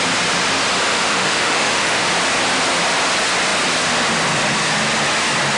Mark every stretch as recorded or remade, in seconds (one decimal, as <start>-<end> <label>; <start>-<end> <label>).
0.0-0.9 recorded; 0.9-2.1 remade; 2.1-5.6 recorded